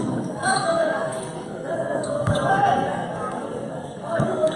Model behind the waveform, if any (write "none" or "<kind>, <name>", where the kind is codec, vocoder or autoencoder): codec, SNAC